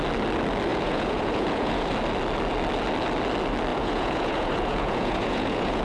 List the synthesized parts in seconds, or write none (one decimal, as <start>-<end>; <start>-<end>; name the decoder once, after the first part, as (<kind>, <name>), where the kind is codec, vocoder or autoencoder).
0.7-1.9 (vocoder, Vocos); 3.7-5.8